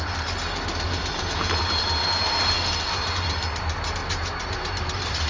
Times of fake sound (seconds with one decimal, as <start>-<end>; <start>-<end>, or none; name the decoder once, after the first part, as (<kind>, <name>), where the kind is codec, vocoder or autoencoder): 4.0-5.3 (vocoder, BigVGAN v2)